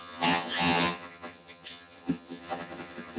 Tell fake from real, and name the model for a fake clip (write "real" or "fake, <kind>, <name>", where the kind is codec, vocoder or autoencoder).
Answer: fake, vocoder, HiFi-GAN